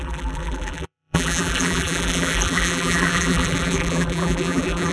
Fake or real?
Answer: fake